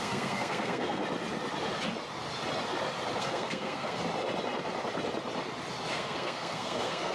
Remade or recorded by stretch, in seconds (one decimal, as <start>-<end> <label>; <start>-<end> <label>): 0.0-1.0 remade; 1.0-3.2 recorded; 3.2-4.0 remade; 4.0-5.9 recorded; 5.9-7.1 remade